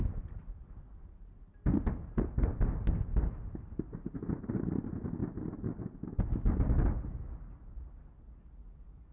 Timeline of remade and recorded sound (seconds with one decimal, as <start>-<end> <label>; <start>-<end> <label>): 0.0-9.1 recorded